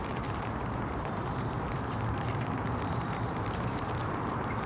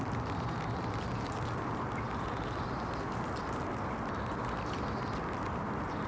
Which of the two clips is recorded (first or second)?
second